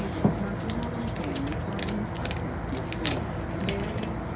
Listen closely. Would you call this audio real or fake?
real